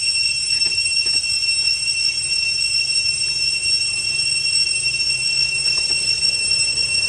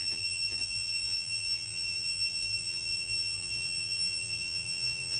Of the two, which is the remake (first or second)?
second